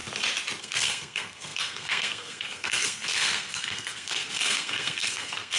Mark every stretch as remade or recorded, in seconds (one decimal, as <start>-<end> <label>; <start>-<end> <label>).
0.0-0.6 recorded; 0.6-5.6 remade